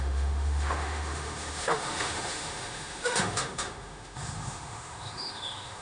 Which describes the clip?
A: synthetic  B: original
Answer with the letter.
A